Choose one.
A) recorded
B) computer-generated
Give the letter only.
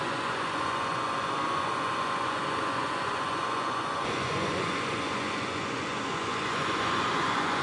B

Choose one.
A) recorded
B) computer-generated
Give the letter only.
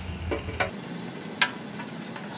A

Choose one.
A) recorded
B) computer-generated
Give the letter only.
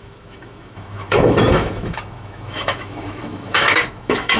B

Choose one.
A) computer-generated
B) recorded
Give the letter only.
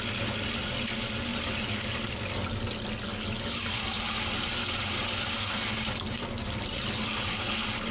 B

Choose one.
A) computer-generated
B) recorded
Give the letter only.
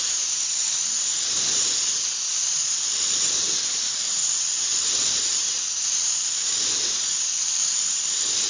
A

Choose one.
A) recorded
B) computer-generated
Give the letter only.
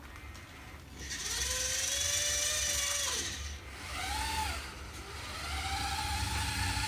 A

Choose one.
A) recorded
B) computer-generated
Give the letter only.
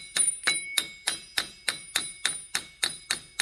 A